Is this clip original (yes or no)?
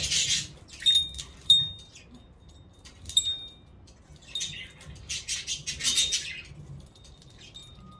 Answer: yes